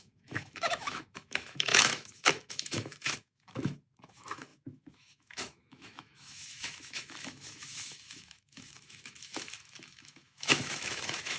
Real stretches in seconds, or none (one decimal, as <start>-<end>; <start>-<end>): none